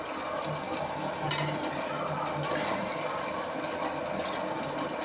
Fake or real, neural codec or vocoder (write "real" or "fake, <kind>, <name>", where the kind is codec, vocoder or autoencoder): real